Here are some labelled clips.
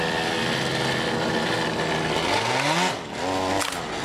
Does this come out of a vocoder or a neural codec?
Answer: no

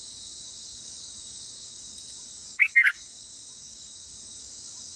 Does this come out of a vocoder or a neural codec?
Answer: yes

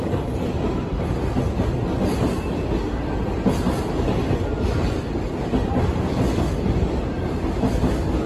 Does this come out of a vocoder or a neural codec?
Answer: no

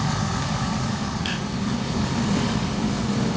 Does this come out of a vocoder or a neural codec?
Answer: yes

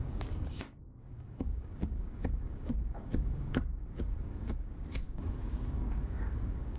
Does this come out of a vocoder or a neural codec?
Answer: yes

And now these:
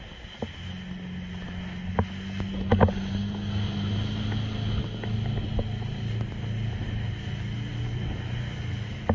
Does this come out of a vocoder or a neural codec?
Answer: no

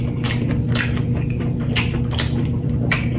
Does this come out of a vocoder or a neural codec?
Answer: no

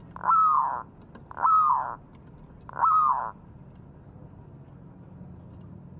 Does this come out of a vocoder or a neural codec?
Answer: no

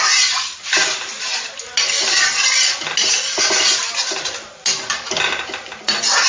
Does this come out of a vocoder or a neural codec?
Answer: no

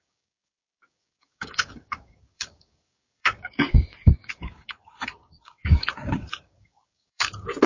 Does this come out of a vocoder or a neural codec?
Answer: yes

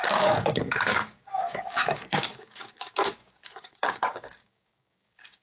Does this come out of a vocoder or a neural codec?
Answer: yes